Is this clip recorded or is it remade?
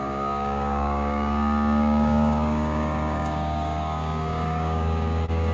remade